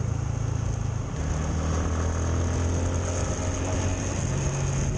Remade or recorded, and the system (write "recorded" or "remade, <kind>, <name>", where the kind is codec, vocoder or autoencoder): recorded